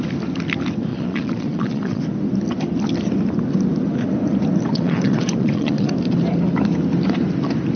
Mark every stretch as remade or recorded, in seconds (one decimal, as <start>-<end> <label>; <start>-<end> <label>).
0.0-0.9 recorded; 0.9-2.0 remade; 2.0-4.7 recorded; 4.7-5.9 remade; 5.9-7.8 recorded